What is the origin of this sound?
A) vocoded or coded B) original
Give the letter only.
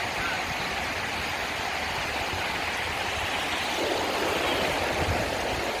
B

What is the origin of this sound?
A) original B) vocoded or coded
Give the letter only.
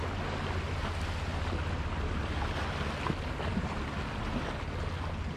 A